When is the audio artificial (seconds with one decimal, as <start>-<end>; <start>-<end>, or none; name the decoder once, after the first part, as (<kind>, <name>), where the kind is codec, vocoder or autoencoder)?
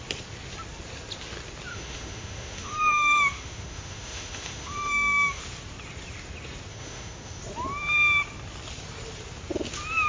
1.7-5.4 (autoencoder, DAC-VAE); 6.7-7.4